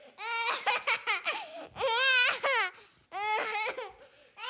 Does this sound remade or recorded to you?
recorded